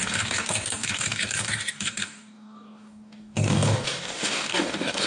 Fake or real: fake